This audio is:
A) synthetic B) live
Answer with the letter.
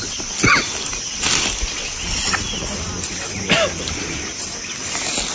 B